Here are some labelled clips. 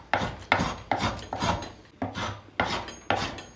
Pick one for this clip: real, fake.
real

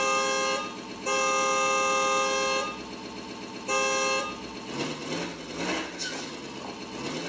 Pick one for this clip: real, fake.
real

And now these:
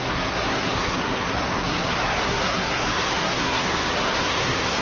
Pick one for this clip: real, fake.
fake